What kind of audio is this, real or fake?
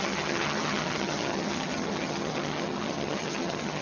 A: fake